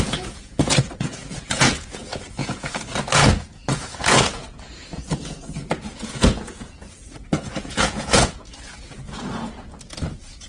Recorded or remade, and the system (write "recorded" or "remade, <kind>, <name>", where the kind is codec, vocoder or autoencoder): remade, vocoder, Vocos